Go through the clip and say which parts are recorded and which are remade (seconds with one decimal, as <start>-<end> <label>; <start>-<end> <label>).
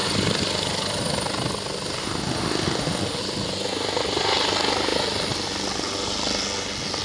0.0-2.0 recorded; 2.0-3.2 remade; 3.2-7.0 recorded